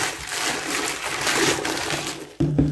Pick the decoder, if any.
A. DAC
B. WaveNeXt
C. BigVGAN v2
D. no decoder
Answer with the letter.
D